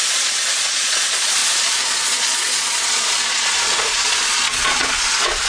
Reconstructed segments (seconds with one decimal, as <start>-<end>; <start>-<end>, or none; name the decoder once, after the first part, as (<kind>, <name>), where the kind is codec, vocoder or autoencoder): 0.0-5.5 (vocoder, Vocos)

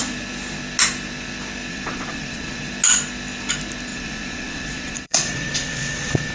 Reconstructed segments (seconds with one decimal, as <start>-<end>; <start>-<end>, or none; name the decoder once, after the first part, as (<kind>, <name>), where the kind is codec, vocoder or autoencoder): 1.7-2.7 (vocoder, Vocos); 3.9-6.3

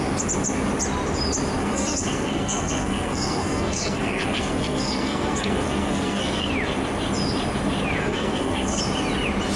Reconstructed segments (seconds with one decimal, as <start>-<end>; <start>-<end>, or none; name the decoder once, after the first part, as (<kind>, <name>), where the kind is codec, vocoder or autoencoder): 1.6-6.5 (codec, SNAC); 8.0-8.8